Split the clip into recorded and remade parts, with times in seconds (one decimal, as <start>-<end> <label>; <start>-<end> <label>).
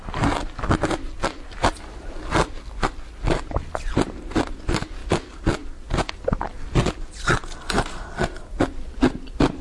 0.0-9.6 recorded